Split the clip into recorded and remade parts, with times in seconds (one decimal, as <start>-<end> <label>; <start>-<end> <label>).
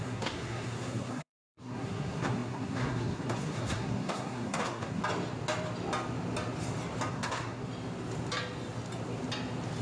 0.0-5.0 remade; 5.0-7.1 recorded; 7.1-7.7 remade; 7.7-9.8 recorded